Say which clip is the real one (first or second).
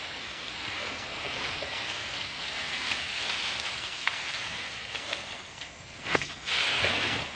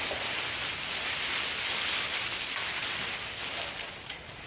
second